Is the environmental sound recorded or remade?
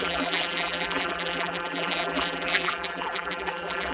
remade